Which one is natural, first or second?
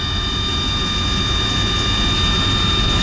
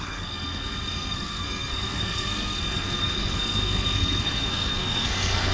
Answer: first